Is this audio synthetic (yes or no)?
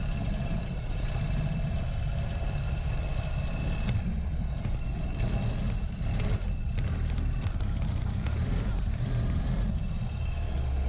yes